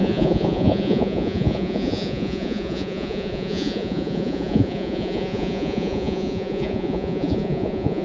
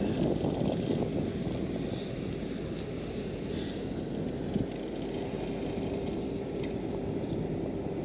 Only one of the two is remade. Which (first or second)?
first